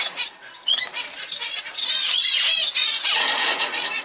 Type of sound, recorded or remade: remade